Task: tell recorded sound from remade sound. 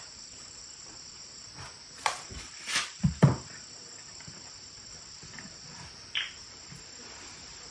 remade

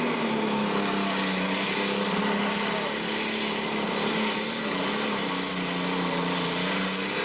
recorded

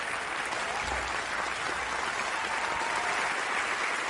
recorded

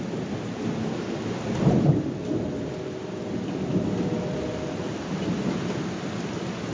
recorded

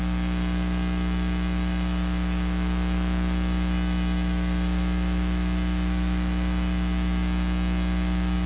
remade